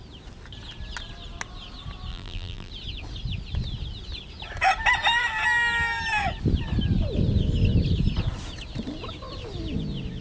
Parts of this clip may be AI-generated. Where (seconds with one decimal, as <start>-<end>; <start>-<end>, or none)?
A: 2.1-2.7